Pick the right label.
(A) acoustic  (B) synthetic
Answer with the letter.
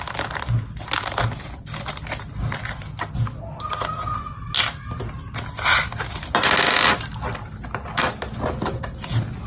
A